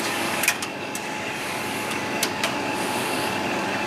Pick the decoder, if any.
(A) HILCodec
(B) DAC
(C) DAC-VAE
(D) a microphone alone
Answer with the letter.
B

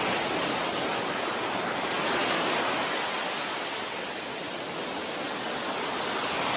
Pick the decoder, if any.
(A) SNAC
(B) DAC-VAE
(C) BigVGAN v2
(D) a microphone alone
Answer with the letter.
D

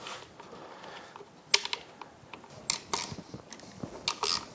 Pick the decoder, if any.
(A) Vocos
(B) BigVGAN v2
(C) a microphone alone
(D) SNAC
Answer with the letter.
C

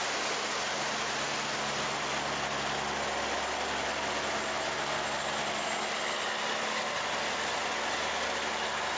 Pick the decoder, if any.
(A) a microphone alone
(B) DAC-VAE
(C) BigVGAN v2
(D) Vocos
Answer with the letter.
A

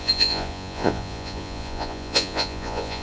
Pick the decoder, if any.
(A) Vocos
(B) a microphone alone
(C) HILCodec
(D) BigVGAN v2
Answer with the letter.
A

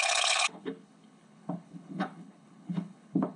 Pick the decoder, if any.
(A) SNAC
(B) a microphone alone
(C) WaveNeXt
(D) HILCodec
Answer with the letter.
D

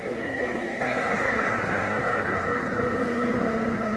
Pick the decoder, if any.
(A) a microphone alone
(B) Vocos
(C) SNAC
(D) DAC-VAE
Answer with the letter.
C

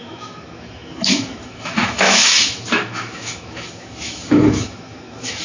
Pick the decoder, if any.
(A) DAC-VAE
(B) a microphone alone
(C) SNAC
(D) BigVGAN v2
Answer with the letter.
A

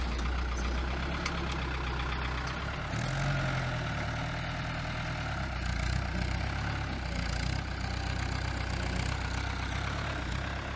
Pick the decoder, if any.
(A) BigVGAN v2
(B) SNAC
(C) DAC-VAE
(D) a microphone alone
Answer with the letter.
D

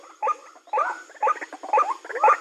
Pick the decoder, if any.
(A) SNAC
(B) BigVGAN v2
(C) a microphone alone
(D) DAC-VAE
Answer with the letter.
C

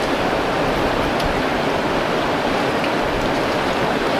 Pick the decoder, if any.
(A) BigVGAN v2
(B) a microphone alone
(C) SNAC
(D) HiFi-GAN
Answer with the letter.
B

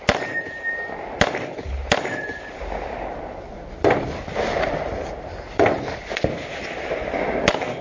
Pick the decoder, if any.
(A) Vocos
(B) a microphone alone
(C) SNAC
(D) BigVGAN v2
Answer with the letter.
B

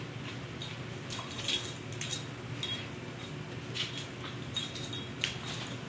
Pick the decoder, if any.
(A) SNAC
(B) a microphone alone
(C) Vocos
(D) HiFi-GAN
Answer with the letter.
B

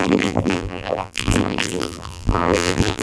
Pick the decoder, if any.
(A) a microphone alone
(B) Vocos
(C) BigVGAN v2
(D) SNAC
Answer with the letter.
C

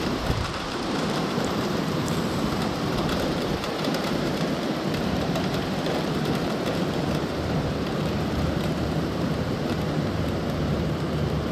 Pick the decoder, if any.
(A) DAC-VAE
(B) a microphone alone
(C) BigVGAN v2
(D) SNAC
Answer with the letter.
C